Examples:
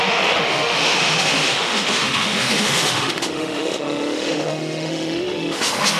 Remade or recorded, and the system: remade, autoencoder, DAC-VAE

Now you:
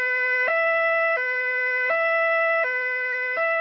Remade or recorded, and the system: remade, autoencoder, DAC-VAE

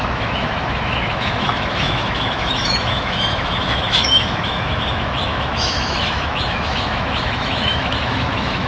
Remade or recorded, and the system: remade, autoencoder, DAC-VAE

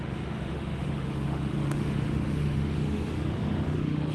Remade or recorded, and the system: remade, autoencoder, DAC-VAE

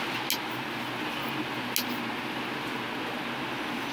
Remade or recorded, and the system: recorded